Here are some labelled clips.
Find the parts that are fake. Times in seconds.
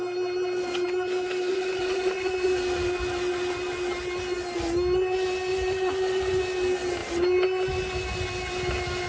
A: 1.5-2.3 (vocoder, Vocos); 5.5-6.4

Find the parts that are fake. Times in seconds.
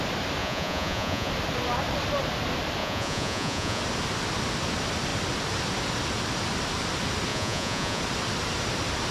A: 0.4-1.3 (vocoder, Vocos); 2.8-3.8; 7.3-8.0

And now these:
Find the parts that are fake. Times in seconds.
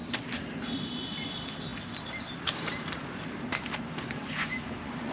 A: 4.2-5.1 (vocoder, Vocos)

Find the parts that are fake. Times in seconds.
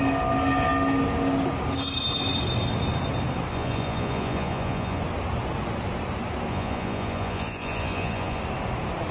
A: 3.5-5.0 (vocoder, Vocos); 6.5-8.4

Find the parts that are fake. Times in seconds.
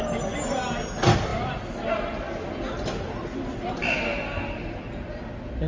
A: none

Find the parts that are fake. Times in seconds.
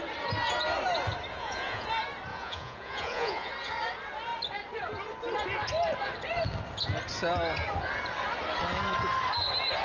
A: 1.3-1.9 (vocoder, Vocos); 2.3-3.5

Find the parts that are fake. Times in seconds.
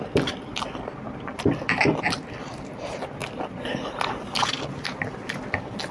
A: none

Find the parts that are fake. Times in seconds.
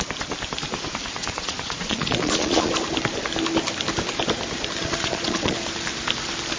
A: 1.2-2.7 (vocoder, Vocos); 4.8-5.7